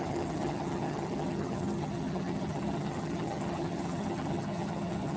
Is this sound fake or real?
fake